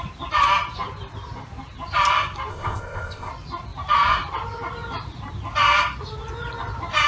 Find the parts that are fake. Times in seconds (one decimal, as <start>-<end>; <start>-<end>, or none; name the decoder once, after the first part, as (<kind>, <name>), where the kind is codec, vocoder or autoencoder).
2.5-3.3 (codec, ZipCodec)